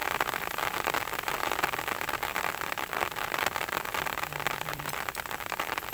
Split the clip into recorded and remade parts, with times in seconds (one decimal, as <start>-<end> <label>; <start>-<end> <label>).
0.0-2.3 recorded; 2.3-5.9 remade